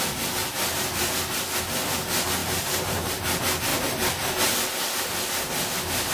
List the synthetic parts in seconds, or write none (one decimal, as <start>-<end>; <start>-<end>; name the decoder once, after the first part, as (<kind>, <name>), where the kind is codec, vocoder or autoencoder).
0.4-1.1 (vocoder, BigVGAN v2); 2.4-3.2